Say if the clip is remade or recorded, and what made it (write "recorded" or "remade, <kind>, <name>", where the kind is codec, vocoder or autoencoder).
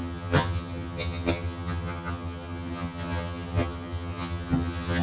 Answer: remade, vocoder, HiFi-GAN